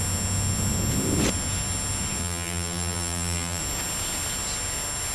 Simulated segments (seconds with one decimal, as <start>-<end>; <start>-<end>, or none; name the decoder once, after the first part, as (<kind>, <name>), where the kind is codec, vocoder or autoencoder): 2.2-3.6 (vocoder, BigVGAN v2)